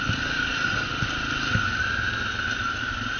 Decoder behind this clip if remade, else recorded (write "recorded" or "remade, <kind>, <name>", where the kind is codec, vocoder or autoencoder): recorded